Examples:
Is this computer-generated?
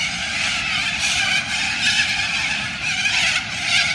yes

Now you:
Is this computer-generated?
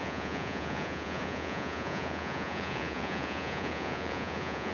yes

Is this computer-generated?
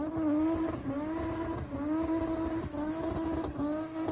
no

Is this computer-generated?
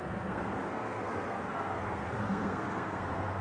yes